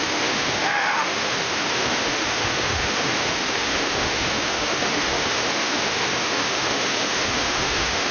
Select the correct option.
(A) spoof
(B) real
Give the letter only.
A